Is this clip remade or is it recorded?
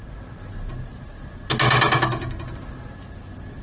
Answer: recorded